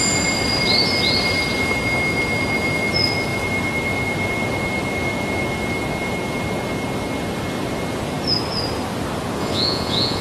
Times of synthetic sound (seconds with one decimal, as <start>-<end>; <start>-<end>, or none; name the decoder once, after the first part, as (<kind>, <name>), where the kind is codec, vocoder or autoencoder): 9.4-10.2 (vocoder, Vocos)